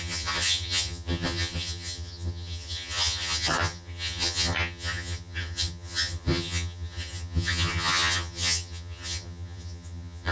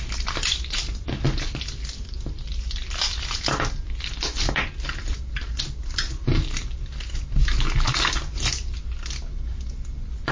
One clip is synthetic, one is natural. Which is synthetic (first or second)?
first